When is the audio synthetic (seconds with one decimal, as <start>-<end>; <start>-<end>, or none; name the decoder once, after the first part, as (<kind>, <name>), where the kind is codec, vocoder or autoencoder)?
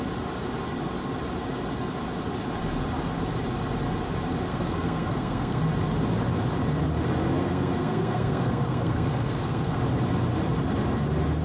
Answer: 4.5-5.6 (codec, SNAC); 7.4-9.8